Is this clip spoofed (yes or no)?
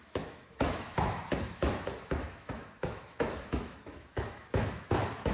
yes